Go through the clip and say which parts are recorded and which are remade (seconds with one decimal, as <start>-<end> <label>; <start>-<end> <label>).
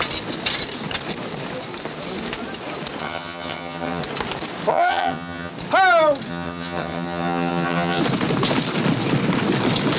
0.0-3.0 recorded; 3.0-4.0 remade; 4.0-4.7 recorded; 4.7-5.5 remade; 5.5-6.3 recorded; 6.3-8.0 remade; 8.0-10.0 recorded